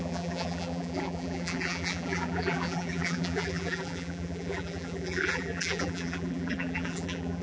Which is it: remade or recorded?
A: remade